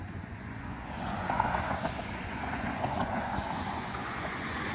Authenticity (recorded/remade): remade